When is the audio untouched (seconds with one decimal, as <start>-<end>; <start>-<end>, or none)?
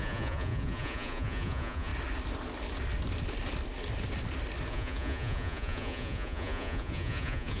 1.9-4.7